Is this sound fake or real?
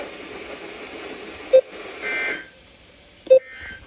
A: real